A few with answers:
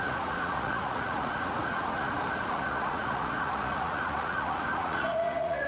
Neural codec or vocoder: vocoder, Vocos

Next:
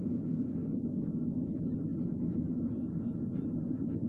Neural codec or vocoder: none